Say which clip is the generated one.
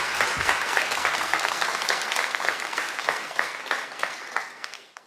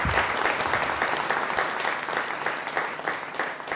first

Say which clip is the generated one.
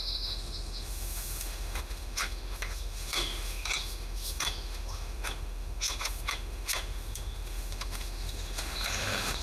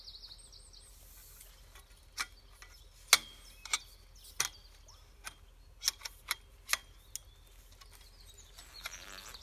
first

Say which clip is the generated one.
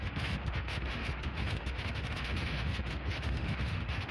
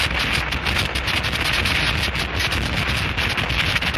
first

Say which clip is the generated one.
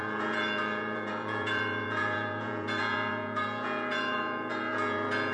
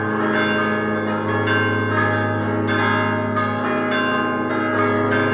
first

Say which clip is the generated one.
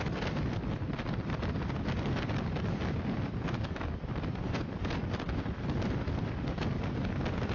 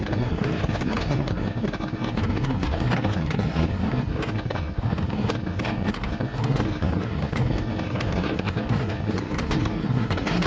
second